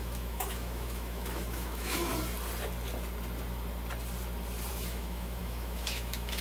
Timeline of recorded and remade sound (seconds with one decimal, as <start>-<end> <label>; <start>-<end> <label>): 0.0-2.1 remade; 2.1-4.7 recorded; 4.7-6.4 remade